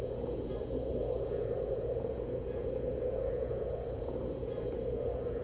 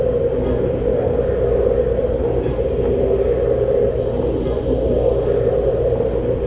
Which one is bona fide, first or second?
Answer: second